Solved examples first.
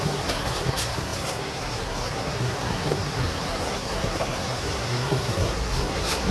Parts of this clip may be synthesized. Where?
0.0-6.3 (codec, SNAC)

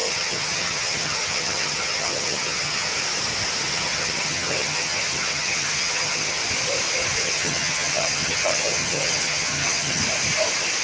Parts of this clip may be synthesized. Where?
0.0-2.9 (vocoder, HiFi-GAN); 3.7-6.4; 7.2-10.0

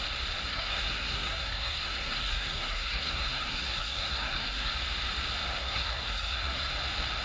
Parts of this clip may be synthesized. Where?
0.4-4.7 (codec, SNAC); 5.6-6.7

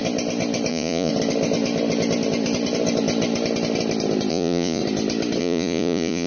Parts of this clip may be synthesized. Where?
0.7-1.1 (vocoder, Vocos); 4.3-4.8; 5.4-6.3

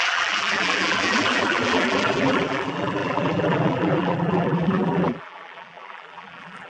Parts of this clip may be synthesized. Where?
0.0-6.7 (vocoder, BigVGAN v2)

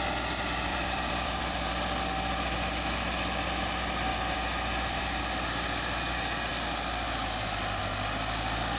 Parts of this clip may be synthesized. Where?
0.7-1.7 (vocoder, BigVGAN v2); 4.1-5.2